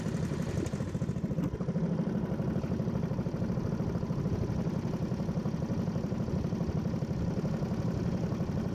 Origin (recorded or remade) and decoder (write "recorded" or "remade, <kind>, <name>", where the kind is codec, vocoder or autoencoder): remade, vocoder, BigVGAN v2